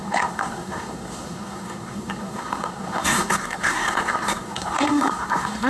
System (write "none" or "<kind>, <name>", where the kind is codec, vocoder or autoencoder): codec, SNAC